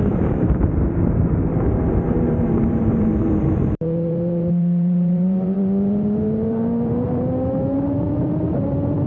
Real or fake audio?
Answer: fake